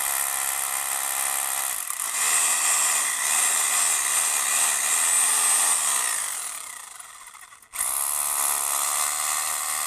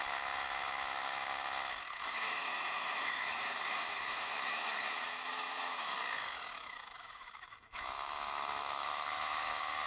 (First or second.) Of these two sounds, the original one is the first